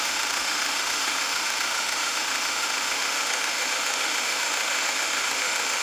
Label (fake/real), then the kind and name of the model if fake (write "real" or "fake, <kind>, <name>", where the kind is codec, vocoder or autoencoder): fake, autoencoder, DAC-VAE